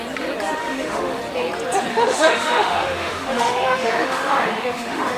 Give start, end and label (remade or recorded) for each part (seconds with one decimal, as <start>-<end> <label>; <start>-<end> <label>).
0.0-0.6 recorded; 0.6-1.2 remade; 1.2-1.9 recorded; 1.9-5.2 remade